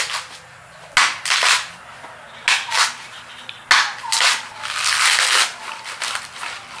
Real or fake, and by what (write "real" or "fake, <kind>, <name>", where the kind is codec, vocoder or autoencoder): real